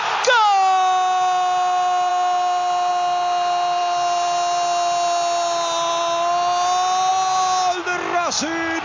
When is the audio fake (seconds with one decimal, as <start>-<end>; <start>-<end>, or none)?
none